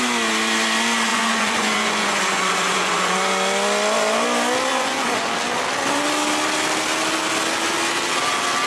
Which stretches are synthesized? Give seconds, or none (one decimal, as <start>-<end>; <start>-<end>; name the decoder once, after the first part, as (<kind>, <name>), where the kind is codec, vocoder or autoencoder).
1.1-3.1 (vocoder, Vocos); 4.7-5.3